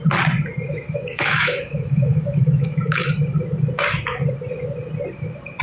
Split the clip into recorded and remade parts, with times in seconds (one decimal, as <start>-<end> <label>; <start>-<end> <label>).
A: 0.0-0.7 recorded; 0.7-3.1 remade; 3.1-5.6 recorded